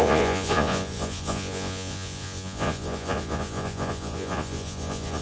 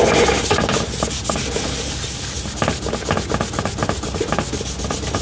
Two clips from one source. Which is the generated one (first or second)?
first